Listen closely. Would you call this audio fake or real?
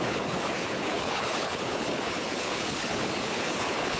fake